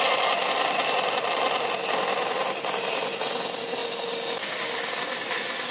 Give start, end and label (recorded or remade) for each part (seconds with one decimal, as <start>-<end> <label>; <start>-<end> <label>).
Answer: 0.0-5.7 recorded